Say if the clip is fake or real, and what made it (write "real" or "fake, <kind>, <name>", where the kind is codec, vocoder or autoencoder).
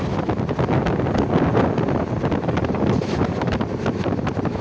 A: real